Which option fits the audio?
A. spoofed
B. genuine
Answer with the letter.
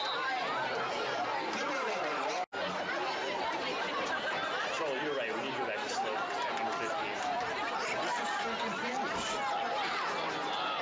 B